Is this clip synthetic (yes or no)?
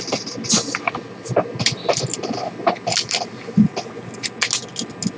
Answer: no